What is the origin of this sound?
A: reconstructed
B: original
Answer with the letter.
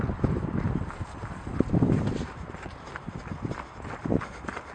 B